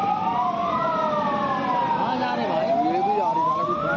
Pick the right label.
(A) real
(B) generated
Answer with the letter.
A